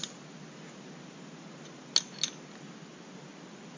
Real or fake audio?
real